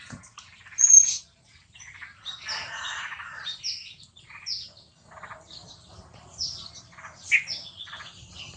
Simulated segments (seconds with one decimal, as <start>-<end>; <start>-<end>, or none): none